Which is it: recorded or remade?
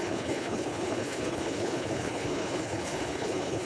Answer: remade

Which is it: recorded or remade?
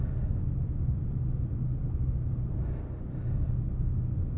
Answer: recorded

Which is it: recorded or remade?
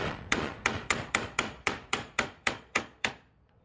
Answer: remade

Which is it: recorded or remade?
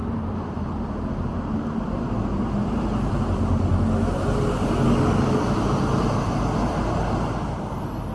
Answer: recorded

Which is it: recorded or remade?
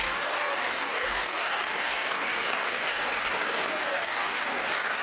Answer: remade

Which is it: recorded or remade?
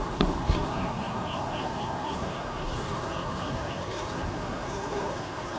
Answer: remade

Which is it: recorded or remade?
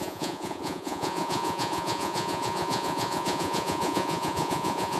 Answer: remade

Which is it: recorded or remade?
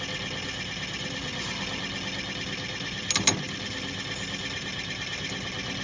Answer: recorded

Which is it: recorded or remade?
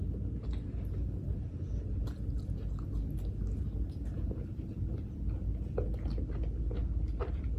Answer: recorded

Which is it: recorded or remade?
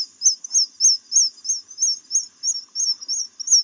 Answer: recorded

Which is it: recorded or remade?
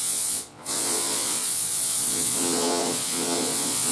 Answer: remade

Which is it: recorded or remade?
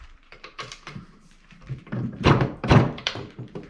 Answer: remade